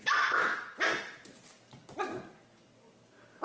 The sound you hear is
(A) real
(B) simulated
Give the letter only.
A